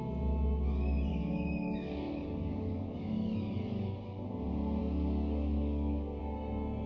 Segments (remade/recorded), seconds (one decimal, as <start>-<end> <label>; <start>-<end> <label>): 0.0-1.1 recorded; 1.1-4.3 remade; 4.3-4.8 recorded; 4.8-6.2 remade; 6.2-6.9 recorded